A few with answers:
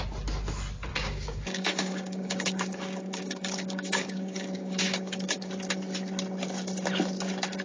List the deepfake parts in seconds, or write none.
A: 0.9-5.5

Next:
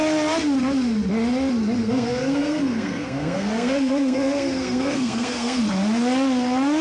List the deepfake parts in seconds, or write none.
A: 1.8-5.6

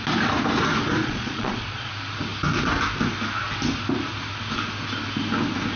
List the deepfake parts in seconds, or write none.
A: 1.0-1.9

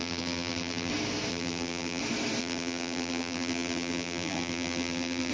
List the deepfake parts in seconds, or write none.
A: 0.0-0.9; 1.3-2.0; 2.4-5.3

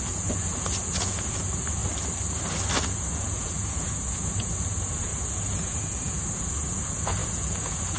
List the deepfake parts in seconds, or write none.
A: 0.0-1.8; 2.8-8.0

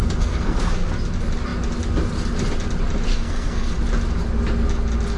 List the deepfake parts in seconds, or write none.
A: 0.0-0.9; 3.1-3.7

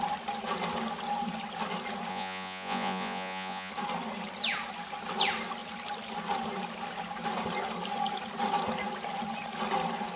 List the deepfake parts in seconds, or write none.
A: 2.1-3.7

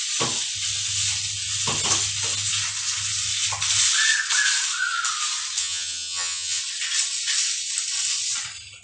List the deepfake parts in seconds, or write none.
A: 5.6-6.6